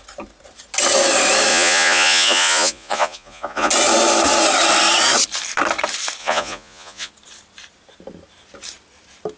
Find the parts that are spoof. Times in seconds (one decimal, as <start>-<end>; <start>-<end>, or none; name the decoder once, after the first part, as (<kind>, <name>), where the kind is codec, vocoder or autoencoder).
1.5-3.7 (vocoder, Vocos); 6.2-7.1